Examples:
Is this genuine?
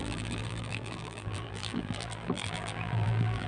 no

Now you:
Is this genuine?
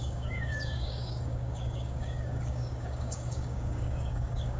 no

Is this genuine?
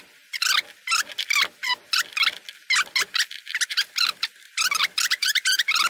yes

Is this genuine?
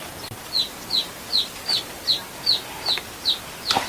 yes